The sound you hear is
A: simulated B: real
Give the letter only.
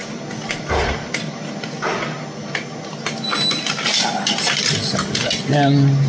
B